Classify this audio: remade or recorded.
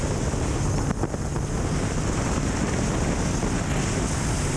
recorded